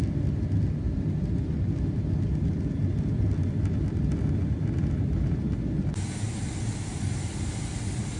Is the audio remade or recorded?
recorded